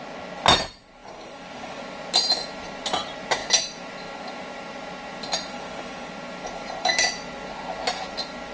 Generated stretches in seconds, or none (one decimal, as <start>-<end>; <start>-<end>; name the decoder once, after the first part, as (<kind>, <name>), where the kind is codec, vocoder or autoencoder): 1.0-1.8 (codec, DAC); 5.5-6.1